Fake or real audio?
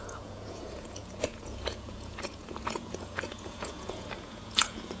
fake